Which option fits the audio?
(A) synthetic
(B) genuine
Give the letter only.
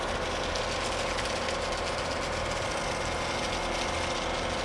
B